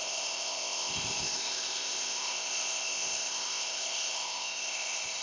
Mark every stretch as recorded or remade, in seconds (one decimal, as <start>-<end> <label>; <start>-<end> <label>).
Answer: 0.0-5.2 remade